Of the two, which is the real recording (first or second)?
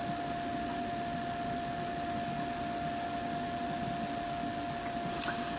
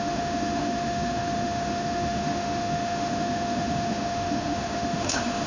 first